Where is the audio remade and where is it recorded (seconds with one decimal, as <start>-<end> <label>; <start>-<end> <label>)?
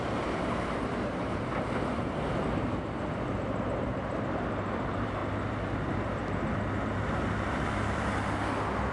0.0-5.2 remade; 5.2-5.8 recorded; 5.8-6.2 remade; 6.2-8.9 recorded